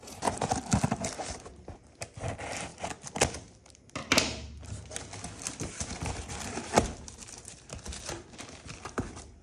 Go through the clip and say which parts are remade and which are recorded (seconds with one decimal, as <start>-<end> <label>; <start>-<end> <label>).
0.0-9.4 recorded